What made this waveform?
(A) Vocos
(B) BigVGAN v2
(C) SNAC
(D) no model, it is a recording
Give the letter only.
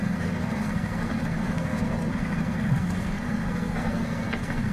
C